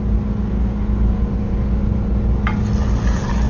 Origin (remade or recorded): recorded